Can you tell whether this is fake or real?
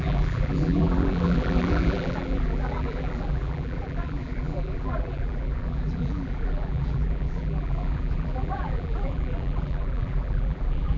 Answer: fake